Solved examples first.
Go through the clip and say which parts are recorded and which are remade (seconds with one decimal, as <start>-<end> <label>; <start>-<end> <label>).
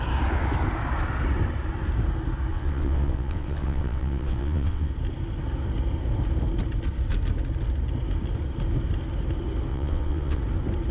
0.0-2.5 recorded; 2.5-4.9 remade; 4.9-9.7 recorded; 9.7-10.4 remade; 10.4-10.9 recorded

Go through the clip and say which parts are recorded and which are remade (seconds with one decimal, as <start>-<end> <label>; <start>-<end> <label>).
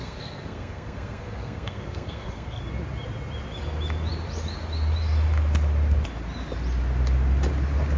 0.0-2.6 remade; 2.6-8.0 recorded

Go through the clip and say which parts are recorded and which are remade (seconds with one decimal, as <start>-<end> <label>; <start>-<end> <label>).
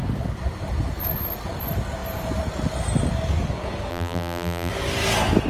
0.0-3.9 recorded; 3.9-4.7 remade; 4.7-5.5 recorded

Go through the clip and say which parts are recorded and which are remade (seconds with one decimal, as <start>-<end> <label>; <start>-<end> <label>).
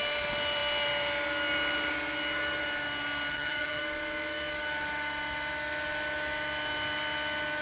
0.0-3.3 recorded; 3.3-3.8 remade; 3.8-7.6 recorded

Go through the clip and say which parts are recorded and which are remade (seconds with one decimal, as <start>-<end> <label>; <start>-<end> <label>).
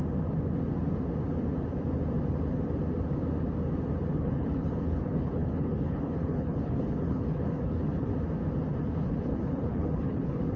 0.0-4.1 recorded; 4.1-8.1 remade; 8.1-8.8 recorded; 8.8-10.6 remade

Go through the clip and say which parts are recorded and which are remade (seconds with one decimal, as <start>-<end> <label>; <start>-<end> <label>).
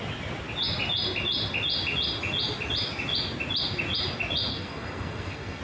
0.0-4.5 recorded; 4.5-5.6 remade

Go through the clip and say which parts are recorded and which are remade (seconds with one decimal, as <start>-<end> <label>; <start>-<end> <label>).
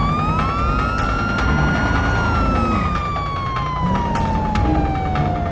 0.0-5.5 recorded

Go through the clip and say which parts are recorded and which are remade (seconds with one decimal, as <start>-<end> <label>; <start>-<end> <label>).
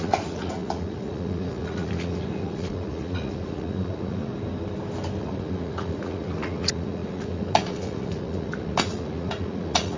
0.0-4.3 remade; 4.3-5.2 recorded; 5.2-10.0 remade